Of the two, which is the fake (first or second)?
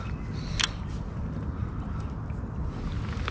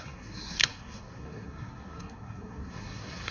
second